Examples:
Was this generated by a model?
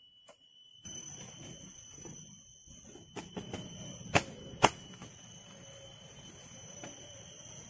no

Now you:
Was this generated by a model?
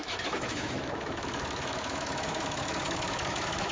yes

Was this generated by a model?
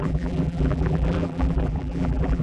yes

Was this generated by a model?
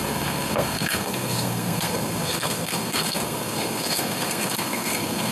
yes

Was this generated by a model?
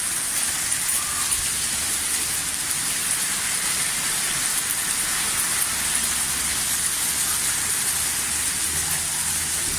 no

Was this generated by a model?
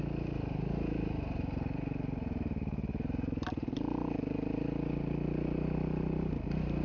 no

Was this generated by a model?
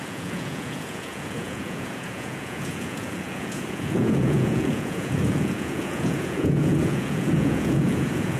yes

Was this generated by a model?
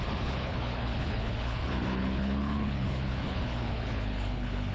yes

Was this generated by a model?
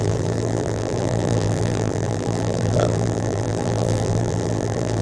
yes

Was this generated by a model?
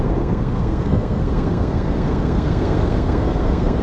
yes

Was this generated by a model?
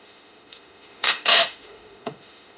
yes